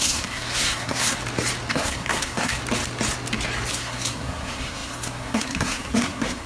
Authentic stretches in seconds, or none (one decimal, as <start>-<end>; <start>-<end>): 1.2-1.7; 2.6-3.7